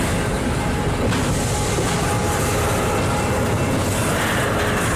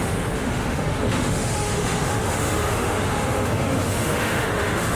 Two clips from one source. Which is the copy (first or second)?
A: second